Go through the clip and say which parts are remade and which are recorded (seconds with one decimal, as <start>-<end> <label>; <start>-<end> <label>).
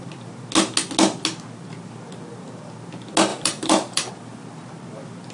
0.0-3.3 recorded; 3.3-4.1 remade; 4.1-5.3 recorded